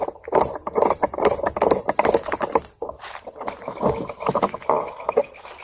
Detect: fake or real real